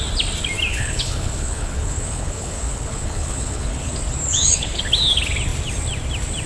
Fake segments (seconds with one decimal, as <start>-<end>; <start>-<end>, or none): 0.7-3.9; 4.3-4.8